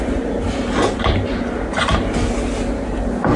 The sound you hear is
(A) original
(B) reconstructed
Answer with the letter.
A